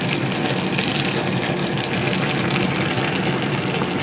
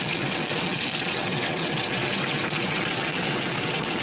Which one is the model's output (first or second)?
second